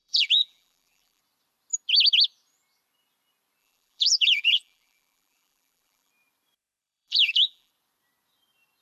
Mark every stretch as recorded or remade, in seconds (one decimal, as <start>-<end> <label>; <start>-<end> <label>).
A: 0.0-1.2 remade; 1.2-3.6 recorded; 3.6-6.1 remade; 6.1-6.8 recorded; 6.8-7.7 remade; 7.7-8.8 recorded